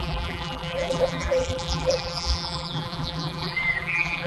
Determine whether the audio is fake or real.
fake